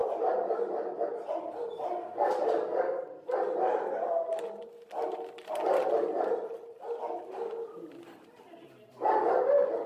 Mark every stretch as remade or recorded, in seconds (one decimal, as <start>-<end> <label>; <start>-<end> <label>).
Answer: 0.0-9.9 recorded